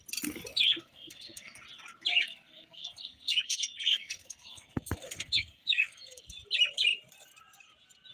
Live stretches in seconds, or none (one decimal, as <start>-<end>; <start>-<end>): 0.0-0.5; 1.6-2.1; 6.3-8.1

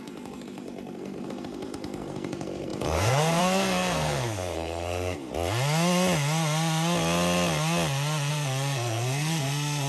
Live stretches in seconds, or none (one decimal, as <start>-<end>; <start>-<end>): 5.3-8.3

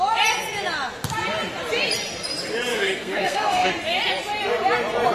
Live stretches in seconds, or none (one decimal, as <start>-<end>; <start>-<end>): 0.0-2.7; 3.7-5.1